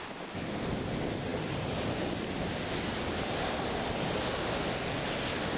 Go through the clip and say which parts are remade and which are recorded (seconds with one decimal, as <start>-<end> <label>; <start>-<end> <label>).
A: 0.0-5.6 recorded